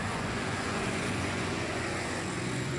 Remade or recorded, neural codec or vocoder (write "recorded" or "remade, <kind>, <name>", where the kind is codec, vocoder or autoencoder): remade, vocoder, Vocos